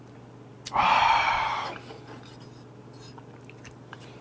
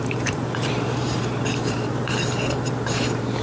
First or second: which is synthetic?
second